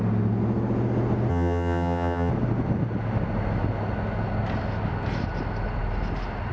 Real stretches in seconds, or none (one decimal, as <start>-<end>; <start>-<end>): 0.0-1.3; 2.3-6.5